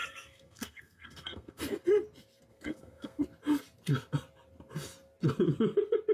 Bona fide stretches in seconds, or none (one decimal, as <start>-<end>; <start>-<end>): 1.6-2.5; 3.2-6.1